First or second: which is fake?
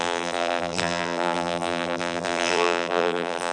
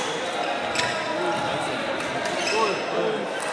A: first